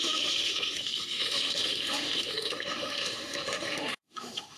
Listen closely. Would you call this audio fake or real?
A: fake